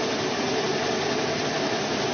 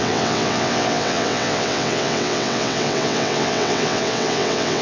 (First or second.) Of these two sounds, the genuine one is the first